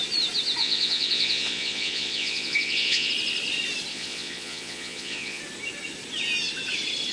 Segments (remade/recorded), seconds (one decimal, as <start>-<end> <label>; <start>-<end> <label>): 0.0-0.6 recorded; 0.6-3.1 remade; 3.1-3.9 recorded; 3.9-5.4 remade; 5.4-7.1 recorded